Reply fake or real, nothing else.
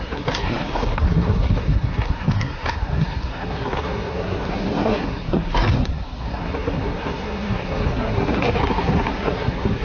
fake